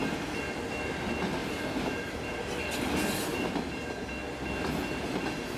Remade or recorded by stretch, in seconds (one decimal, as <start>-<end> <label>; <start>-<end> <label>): 0.0-1.4 recorded; 1.4-2.4 remade; 2.4-3.3 recorded; 3.3-4.1 remade; 4.1-5.6 recorded